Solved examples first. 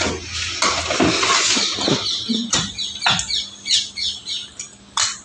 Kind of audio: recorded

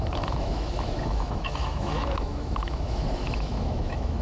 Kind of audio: remade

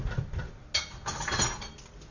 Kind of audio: recorded